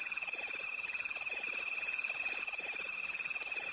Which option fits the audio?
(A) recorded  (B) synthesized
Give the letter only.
A